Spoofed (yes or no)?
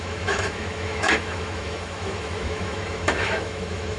yes